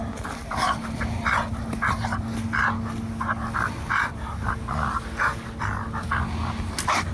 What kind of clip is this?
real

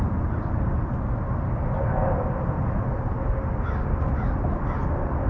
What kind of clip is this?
real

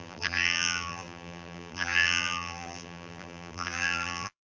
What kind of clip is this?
fake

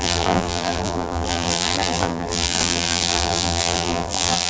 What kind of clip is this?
fake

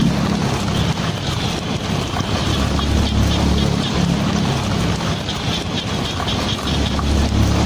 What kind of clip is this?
real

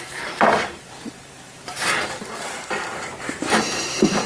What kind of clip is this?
fake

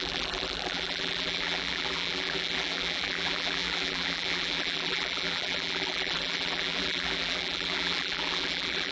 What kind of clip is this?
fake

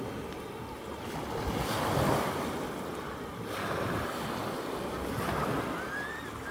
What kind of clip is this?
real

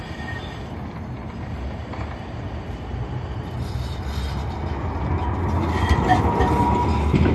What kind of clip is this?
real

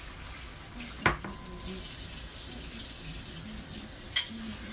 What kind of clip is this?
real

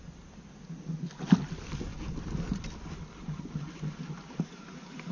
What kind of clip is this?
real